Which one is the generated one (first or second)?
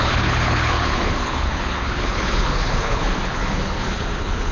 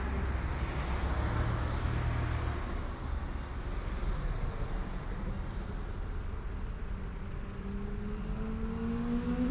first